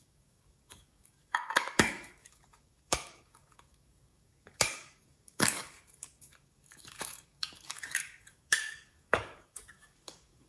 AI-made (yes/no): yes